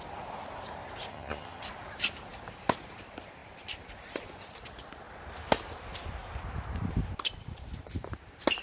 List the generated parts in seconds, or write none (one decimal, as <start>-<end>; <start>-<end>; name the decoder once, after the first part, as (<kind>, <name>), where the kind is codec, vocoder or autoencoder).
1.1-1.6 (vocoder, HiFi-GAN)